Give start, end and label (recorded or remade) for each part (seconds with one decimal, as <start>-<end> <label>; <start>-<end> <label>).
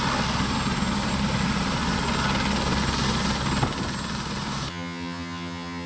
0.0-4.7 recorded; 4.7-5.9 remade